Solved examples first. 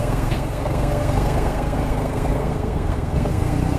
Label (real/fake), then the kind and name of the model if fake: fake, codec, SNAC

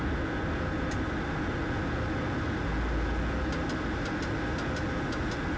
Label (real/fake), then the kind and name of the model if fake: real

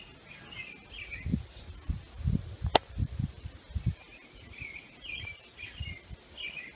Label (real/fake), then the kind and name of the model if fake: real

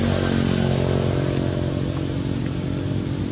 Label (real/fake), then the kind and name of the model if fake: real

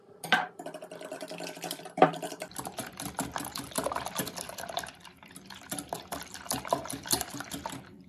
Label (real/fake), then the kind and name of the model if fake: fake, vocoder, BigVGAN v2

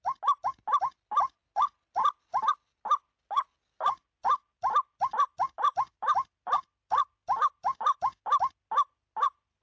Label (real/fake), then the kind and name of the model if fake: real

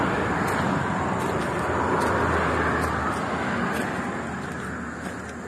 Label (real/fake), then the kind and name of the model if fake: real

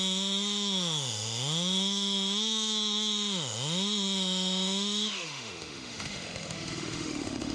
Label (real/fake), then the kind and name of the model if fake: fake, autoencoder, DAC-VAE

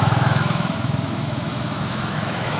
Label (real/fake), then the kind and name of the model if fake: fake, autoencoder, DAC-VAE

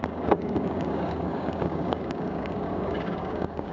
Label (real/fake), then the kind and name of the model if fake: fake, codec, DAC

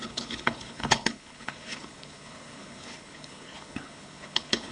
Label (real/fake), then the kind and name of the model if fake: fake, codec, HILCodec